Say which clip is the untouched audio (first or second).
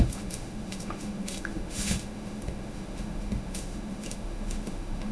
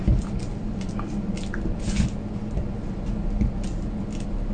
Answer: second